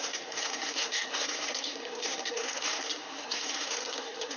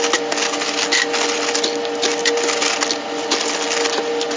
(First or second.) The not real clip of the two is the first